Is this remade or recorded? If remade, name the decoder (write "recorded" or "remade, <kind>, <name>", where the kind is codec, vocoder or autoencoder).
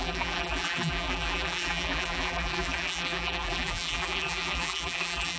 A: remade, vocoder, BigVGAN v2